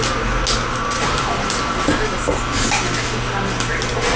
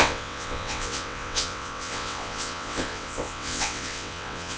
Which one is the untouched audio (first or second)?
first